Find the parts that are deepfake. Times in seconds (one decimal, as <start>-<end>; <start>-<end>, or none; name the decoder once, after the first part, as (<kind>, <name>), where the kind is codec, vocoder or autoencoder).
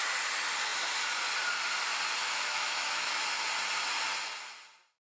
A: 2.2-3.2 (autoencoder, DAC-VAE)